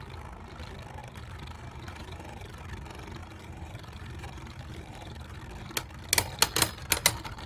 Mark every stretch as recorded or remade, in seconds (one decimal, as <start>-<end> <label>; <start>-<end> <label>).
0.0-1.0 recorded; 1.0-2.6 remade; 2.6-3.2 recorded; 3.2-5.4 remade; 5.4-7.5 recorded